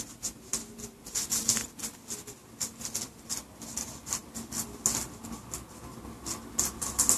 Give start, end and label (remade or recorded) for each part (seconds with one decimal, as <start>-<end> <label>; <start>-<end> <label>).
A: 0.0-2.4 recorded; 2.4-3.2 remade; 3.2-7.2 recorded